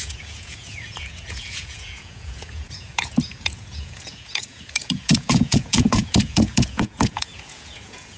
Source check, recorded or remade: remade